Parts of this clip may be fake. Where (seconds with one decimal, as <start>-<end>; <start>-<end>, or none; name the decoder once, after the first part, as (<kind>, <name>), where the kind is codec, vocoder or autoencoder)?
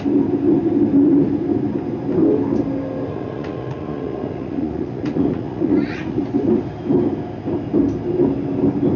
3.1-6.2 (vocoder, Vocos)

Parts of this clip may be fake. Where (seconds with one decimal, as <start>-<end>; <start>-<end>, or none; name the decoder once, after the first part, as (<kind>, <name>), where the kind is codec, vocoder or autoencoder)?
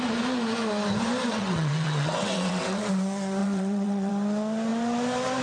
1.3-2.9 (vocoder, WaveNeXt); 3.4-4.1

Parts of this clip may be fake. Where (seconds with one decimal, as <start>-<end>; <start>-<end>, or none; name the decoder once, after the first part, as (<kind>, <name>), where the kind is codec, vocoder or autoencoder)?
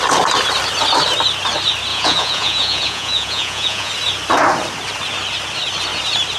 1.9-3.9 (vocoder, Vocos)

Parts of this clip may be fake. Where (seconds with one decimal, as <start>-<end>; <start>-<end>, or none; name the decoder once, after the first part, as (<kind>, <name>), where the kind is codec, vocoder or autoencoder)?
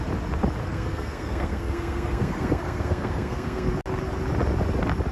0.6-3.7 (codec, SNAC)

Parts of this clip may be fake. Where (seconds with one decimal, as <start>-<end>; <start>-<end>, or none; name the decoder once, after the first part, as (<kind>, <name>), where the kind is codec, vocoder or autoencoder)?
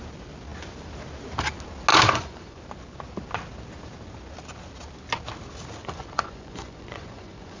1.9-2.6 (vocoder, Vocos); 5.8-7.6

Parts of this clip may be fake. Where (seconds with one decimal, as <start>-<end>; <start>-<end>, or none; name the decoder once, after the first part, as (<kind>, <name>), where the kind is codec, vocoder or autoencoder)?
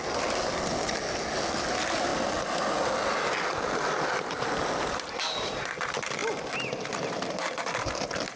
none